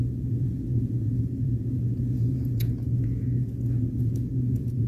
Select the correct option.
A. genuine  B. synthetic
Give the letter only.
B